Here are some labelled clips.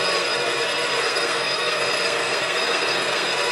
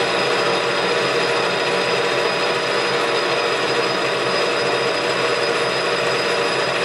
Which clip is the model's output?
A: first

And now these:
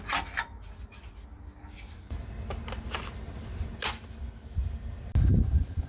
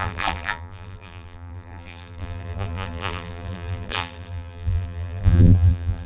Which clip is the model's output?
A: second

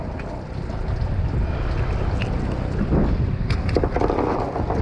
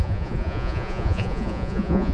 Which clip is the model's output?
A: second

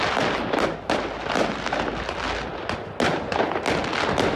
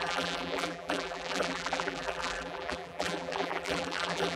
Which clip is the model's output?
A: second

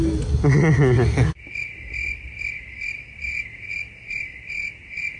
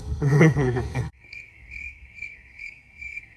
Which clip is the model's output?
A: second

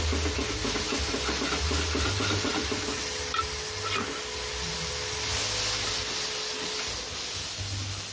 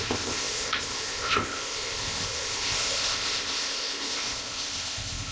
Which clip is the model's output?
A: second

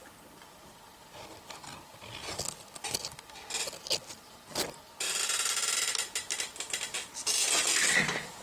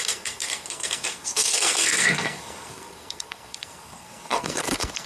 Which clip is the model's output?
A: second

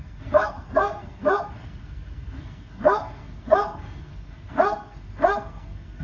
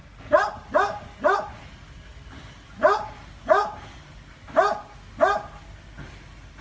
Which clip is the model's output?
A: first